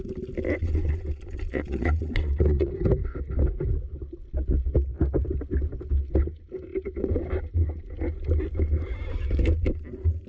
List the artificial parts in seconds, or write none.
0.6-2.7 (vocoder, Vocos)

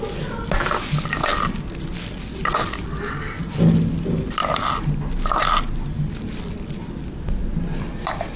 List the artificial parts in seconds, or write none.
none